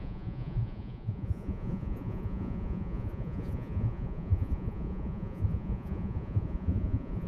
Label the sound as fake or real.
fake